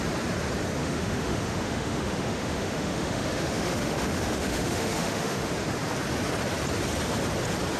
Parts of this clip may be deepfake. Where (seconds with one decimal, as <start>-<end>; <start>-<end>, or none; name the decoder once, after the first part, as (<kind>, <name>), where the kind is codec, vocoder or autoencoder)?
0.8-5.5 (autoencoder, DAC-VAE)